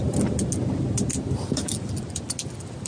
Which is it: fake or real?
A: real